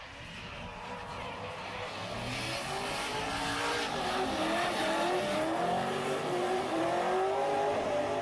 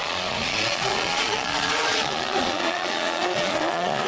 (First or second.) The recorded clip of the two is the first